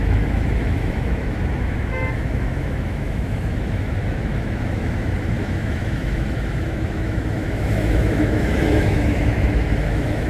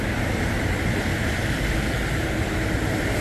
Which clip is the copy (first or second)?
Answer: first